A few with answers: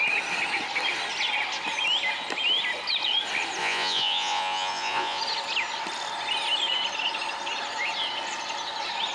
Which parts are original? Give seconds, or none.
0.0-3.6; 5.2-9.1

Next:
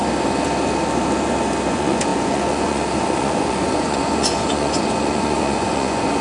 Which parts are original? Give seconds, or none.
0.0-1.7

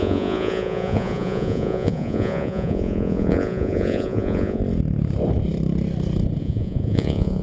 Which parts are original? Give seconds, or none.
4.6-6.4

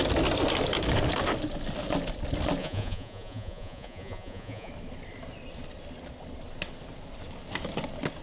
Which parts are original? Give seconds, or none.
0.0-2.6; 4.7-8.2

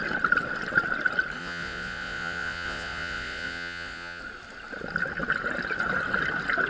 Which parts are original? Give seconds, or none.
0.0-1.4; 4.2-6.7

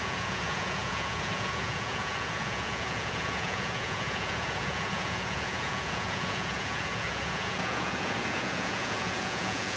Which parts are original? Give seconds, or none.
none

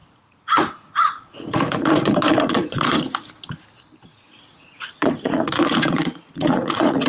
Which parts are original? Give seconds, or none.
3.3-4.1

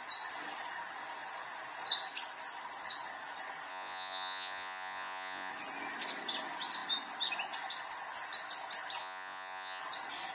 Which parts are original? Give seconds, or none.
0.0-3.7; 5.5-9.0; 9.8-10.3